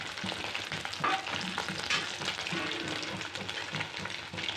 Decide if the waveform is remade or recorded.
recorded